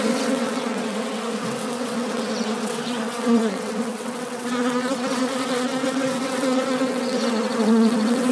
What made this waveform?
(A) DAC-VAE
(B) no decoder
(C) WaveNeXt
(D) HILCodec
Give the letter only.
C